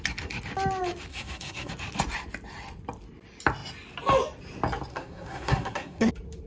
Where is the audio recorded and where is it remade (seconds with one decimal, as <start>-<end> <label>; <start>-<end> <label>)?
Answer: 0.0-1.1 recorded; 1.1-1.7 remade; 1.7-4.9 recorded; 4.9-6.1 remade; 6.1-6.5 recorded